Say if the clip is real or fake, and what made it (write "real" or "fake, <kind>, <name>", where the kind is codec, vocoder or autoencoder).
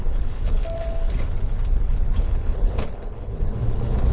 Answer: fake, codec, HILCodec